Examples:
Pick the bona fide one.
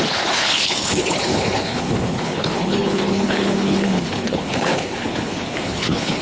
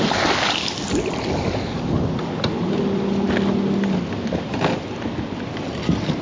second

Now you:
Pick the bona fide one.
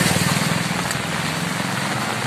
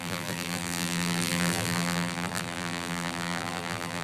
first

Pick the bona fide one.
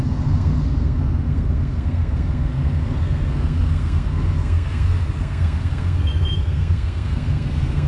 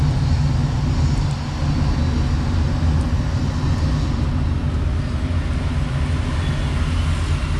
second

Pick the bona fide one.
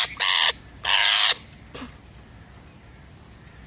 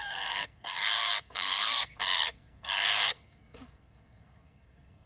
first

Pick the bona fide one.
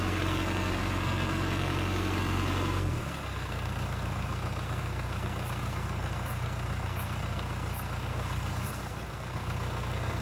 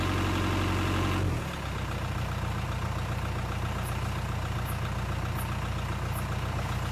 second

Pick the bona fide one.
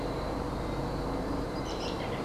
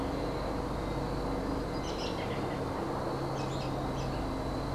second